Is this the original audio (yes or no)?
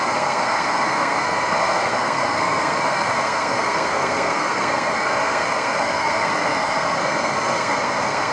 no